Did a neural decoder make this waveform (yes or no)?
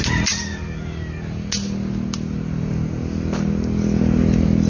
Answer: no